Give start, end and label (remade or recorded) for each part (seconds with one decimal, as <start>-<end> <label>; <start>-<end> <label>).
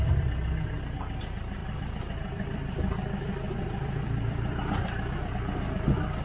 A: 0.0-1.6 recorded; 1.6-5.3 remade; 5.3-6.2 recorded